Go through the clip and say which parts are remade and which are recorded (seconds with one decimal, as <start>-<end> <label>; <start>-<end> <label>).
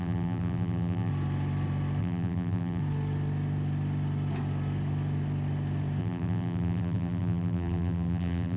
0.0-1.1 remade; 1.1-2.0 recorded; 2.0-2.8 remade; 2.8-6.0 recorded; 6.0-8.6 remade